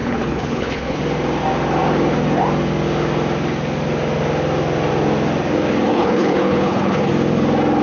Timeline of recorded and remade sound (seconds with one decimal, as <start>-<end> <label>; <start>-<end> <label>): 0.0-1.0 remade; 1.0-5.9 recorded; 5.9-7.1 remade; 7.1-7.8 recorded